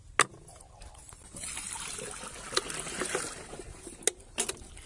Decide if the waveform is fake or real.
real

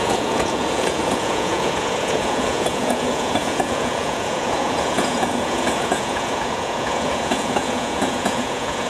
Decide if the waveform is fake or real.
fake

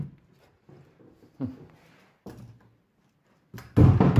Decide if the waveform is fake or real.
real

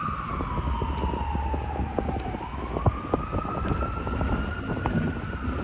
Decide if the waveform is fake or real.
real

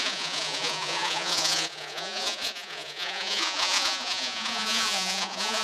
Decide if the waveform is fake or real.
fake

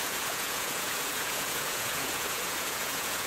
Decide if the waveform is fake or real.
fake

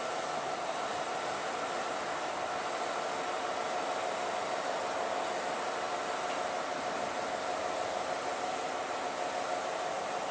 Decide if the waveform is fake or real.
real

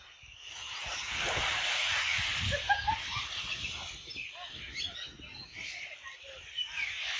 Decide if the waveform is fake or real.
real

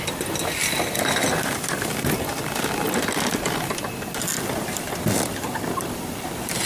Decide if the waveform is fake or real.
real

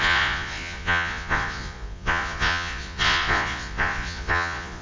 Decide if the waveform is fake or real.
fake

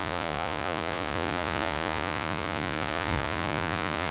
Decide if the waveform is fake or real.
fake